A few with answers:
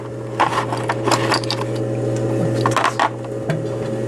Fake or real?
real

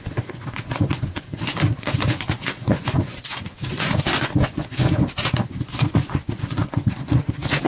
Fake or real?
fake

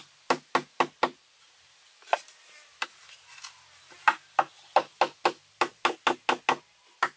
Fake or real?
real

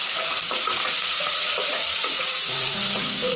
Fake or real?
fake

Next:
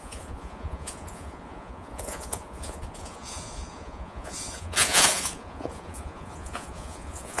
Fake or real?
fake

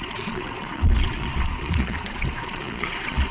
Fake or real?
fake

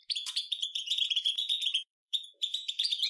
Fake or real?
fake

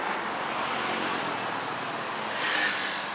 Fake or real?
real